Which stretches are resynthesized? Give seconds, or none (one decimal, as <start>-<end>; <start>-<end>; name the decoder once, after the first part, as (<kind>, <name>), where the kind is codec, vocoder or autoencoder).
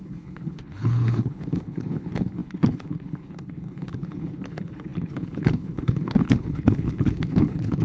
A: 0.0-7.8 (codec, HILCodec)